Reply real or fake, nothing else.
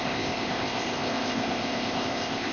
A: fake